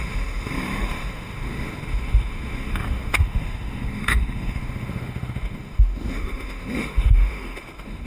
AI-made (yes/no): yes